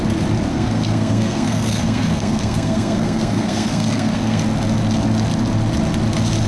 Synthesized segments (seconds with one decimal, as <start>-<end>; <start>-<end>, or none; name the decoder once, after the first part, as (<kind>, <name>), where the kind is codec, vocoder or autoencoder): 0.5-4.4 (codec, SNAC)